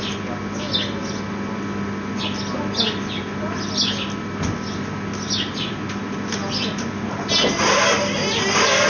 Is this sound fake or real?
real